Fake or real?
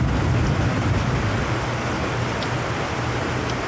real